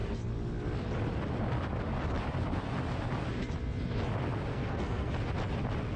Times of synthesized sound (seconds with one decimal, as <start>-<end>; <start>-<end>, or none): 4.5-5.1